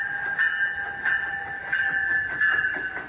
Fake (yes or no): no